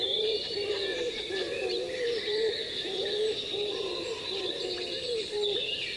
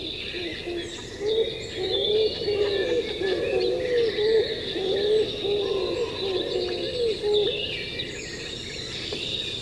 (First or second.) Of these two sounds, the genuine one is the second